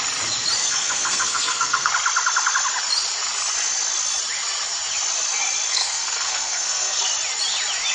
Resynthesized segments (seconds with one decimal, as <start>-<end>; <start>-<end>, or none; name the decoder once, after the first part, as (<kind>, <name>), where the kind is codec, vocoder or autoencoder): 0.6-1.9 (codec, SNAC); 5.7-7.0